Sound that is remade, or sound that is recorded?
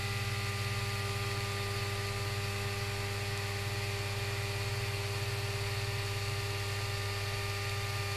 recorded